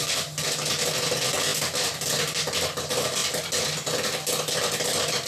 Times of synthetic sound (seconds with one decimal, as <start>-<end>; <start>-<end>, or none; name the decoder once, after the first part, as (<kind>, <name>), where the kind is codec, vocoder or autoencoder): none